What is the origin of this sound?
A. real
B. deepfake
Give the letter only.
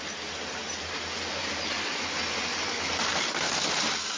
A